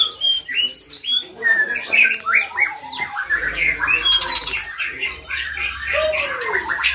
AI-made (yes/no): yes